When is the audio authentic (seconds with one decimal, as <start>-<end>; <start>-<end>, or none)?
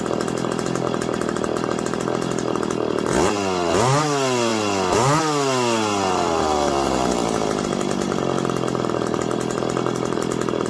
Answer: 0.0-10.7